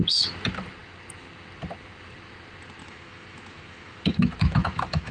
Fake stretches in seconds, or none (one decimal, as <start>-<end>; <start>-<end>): 2.8-5.1